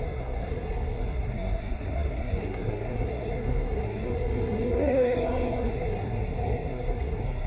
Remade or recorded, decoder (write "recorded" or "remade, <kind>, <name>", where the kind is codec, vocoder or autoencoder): remade, codec, SNAC